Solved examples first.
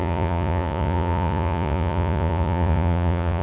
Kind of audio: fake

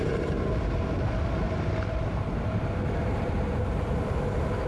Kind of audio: fake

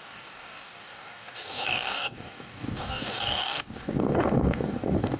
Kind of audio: fake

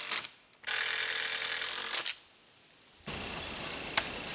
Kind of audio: real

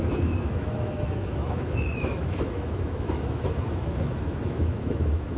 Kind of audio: fake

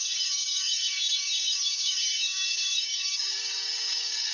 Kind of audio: fake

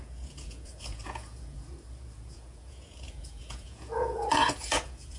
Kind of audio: fake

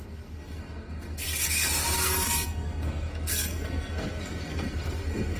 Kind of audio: fake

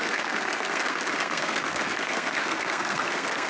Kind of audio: fake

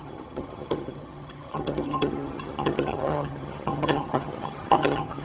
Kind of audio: fake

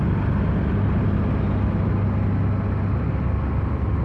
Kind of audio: real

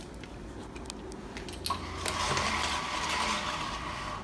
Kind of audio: real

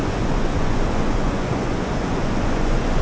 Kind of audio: fake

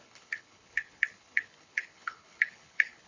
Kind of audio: fake